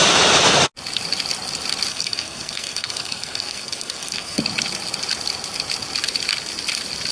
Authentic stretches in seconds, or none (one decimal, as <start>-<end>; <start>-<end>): 0.0-1.9; 4.4-7.1